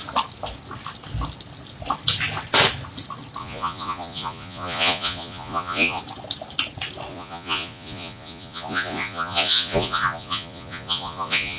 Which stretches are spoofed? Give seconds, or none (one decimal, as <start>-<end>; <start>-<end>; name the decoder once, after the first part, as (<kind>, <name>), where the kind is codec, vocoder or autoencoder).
3.4-6.0 (vocoder, Vocos); 7.1-11.6